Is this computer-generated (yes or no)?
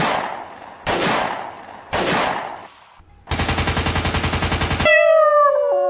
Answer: no